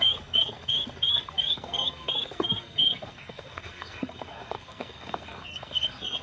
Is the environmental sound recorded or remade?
remade